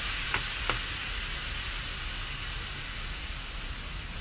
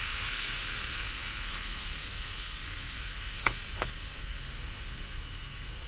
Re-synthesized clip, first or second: second